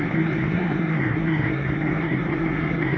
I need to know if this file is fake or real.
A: fake